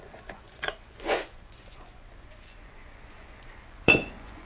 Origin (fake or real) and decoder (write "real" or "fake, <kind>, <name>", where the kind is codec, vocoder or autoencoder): fake, vocoder, Vocos